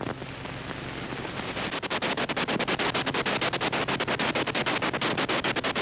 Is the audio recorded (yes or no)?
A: yes